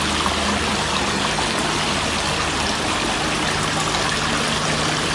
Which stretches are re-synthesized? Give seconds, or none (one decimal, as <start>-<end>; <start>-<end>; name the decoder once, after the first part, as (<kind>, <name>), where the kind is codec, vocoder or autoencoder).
none